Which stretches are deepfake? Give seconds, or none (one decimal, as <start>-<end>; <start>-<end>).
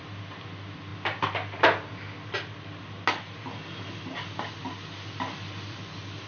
none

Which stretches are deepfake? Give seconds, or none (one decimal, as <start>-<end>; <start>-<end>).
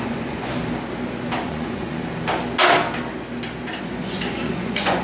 0.0-0.5; 1.4-2.0; 3.8-5.0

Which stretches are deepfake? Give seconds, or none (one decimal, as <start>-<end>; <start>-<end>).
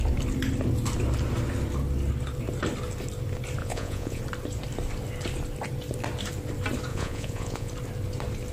3.6-4.2; 6.9-7.7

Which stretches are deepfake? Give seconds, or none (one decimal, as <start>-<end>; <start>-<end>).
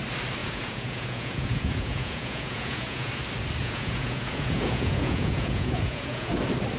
0.4-3.1; 3.6-6.3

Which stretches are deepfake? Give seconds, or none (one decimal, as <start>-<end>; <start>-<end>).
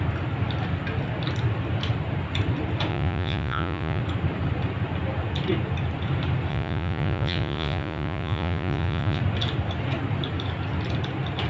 2.9-4.0; 6.5-9.2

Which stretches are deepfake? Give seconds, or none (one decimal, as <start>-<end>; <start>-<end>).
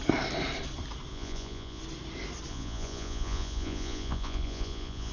1.1-1.8; 2.5-5.1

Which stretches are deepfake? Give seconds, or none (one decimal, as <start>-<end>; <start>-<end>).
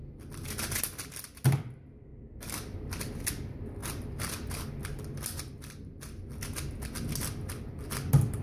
none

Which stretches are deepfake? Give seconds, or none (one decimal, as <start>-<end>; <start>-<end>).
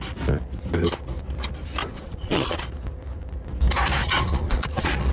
1.8-2.7; 4.0-5.1